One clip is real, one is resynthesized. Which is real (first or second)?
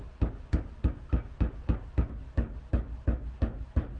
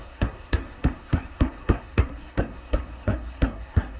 first